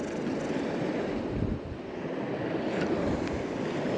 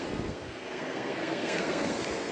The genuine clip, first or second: first